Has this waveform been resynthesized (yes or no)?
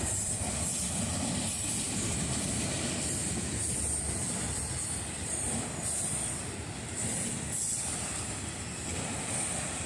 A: yes